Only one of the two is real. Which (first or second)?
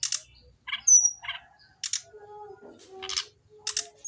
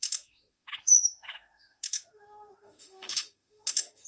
first